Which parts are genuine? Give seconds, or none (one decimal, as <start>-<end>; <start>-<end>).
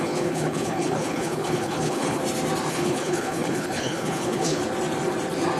2.2-2.7; 4.6-5.6